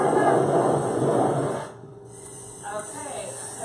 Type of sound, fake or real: fake